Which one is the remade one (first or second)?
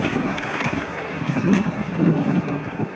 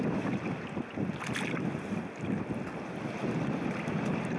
first